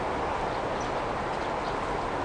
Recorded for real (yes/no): yes